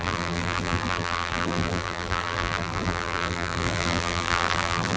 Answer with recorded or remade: remade